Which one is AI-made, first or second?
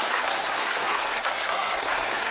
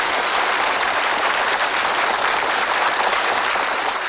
first